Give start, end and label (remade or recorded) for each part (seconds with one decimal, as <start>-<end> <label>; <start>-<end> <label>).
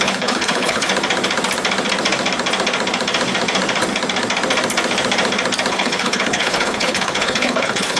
0.0-0.9 remade; 0.9-5.7 recorded; 5.7-8.0 remade